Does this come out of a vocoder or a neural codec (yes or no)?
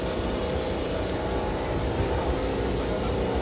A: no